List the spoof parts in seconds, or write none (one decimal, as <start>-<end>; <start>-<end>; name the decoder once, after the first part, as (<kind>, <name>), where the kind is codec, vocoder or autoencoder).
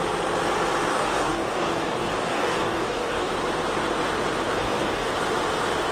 0.9-3.3 (codec, DAC); 4.6-5.1